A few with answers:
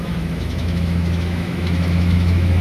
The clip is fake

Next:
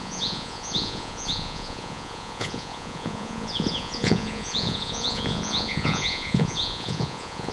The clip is fake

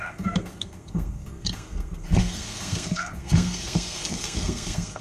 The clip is fake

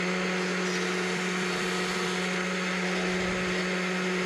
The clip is real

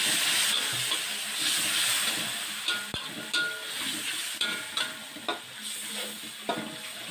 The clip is real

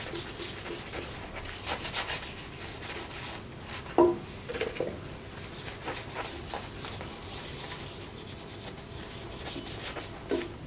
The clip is real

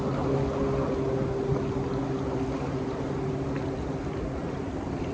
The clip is real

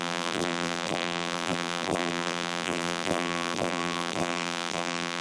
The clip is fake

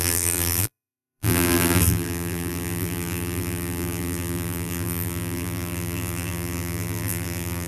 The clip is fake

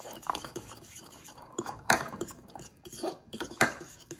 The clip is fake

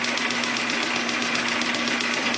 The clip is real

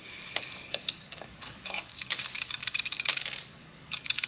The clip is fake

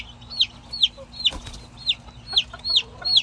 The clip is real